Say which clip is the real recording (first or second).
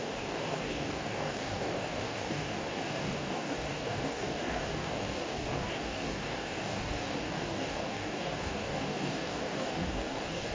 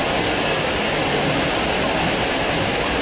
second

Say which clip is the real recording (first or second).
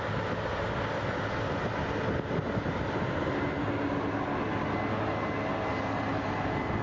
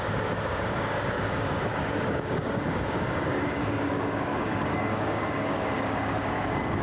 first